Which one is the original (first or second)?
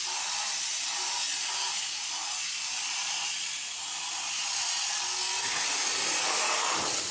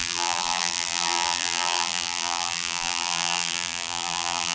first